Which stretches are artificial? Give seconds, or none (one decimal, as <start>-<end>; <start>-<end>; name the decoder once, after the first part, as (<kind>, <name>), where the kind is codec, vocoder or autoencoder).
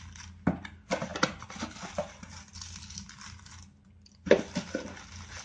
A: none